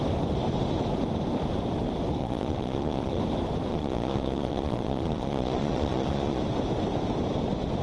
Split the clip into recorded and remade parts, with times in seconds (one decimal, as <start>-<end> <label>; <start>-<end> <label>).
0.0-2.2 recorded; 2.2-3.2 remade; 3.2-3.7 recorded; 3.7-6.4 remade; 6.4-7.8 recorded